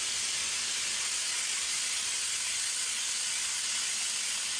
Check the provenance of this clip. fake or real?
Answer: real